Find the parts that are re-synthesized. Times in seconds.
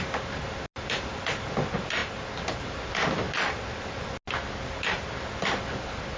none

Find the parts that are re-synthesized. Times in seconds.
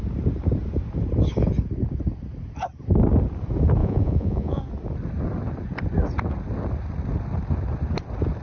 3.8-4.6 (vocoder, Vocos)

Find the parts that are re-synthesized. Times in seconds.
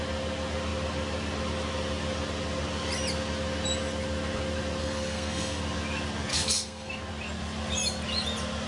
4.8-5.6 (codec, SNAC); 6.3-6.9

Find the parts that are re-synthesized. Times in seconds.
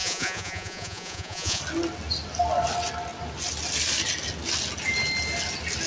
0.0-1.6 (vocoder, Vocos)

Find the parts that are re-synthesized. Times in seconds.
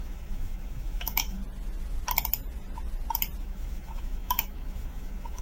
0.0-1.4 (autoencoder, DAC-VAE); 3.4-5.4